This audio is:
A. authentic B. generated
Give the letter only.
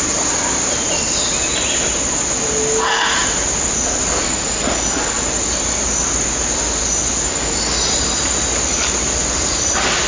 A